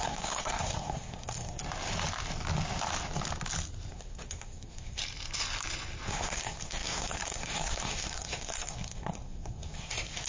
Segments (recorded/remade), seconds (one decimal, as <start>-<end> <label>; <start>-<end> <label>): 0.0-1.6 remade; 1.6-3.9 recorded; 3.9-5.0 remade; 5.0-6.1 recorded; 6.1-10.3 remade